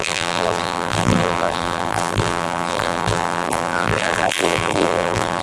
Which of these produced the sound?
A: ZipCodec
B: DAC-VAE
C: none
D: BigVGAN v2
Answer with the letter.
D